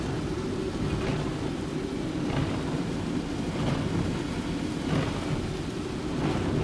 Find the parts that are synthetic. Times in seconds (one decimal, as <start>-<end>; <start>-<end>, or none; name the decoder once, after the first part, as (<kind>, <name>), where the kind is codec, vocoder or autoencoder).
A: none